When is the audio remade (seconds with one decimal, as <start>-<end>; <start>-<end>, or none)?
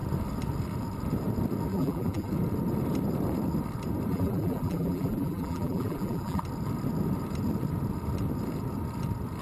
1.7-2.3; 4.1-6.4